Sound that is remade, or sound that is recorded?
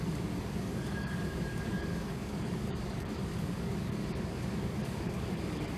remade